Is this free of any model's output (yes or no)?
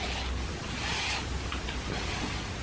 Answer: yes